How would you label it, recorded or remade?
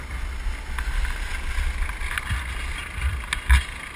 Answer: recorded